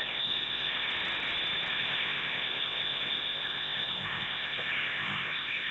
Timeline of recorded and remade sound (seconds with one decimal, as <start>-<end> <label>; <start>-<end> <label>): 0.0-0.9 remade; 0.9-1.7 recorded; 1.7-5.7 remade